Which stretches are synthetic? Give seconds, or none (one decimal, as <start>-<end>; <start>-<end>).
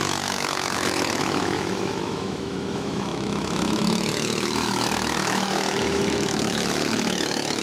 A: 0.0-7.6